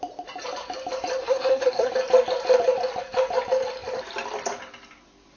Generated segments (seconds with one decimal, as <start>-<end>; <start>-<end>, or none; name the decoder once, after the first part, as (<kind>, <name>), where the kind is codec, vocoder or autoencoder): 1.2-1.9 (codec, SNAC)